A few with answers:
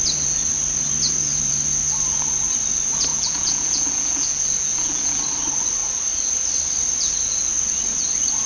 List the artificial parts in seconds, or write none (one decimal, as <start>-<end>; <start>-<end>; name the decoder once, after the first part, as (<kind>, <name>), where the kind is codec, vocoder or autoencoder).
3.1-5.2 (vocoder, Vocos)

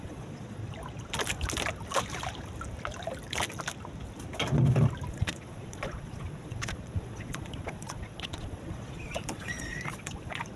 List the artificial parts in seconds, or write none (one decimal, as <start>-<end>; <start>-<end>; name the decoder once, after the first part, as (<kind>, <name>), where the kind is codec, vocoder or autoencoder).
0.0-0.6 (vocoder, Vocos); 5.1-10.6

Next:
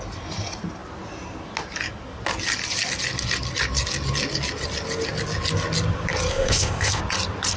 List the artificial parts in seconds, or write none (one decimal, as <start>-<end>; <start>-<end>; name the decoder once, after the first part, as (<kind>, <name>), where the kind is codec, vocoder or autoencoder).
6.3-7.0 (codec, ZipCodec)

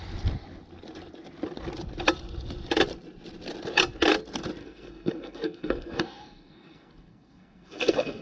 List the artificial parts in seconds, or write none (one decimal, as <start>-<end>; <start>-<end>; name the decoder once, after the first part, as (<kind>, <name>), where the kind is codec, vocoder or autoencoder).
4.6-8.2 (codec, SNAC)

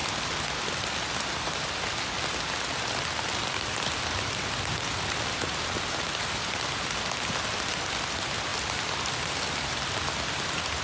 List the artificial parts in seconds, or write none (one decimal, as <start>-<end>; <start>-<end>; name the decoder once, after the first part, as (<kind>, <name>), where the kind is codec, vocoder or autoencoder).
none